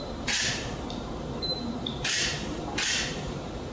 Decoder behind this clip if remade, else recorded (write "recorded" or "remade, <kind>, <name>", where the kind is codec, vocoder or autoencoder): remade, vocoder, BigVGAN v2